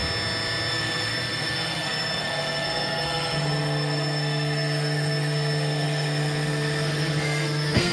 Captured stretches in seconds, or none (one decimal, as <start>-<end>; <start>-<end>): 0.0-0.7

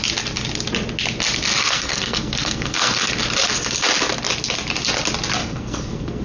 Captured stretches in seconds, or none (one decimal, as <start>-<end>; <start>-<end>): 0.0-1.5; 3.1-5.4

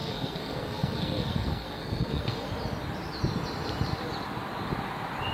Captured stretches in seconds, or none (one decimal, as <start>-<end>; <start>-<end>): 2.5-5.3

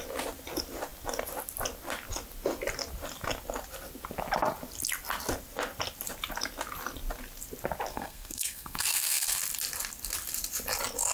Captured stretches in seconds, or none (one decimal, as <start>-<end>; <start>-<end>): 0.0-7.9; 9.4-11.1

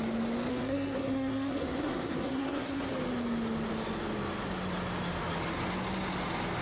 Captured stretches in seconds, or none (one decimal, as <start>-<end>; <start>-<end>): 0.0-0.5; 2.9-6.6

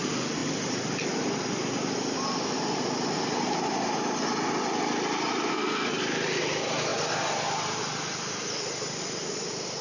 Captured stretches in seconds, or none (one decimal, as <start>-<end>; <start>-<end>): 0.0-5.5; 6.0-9.8

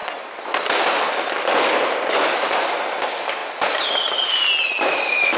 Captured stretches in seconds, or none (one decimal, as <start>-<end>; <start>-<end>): 0.0-5.4

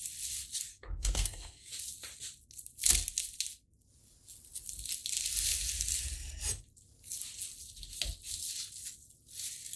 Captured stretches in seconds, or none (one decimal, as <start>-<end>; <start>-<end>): 0.0-0.7; 1.7-9.8